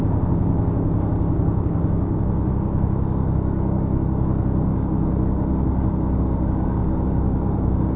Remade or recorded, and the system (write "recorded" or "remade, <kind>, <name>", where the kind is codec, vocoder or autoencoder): remade, codec, DAC